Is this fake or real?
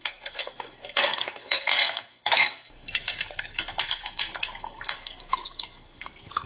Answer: fake